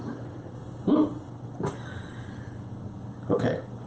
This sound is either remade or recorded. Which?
recorded